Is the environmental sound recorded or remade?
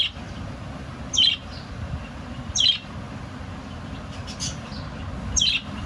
recorded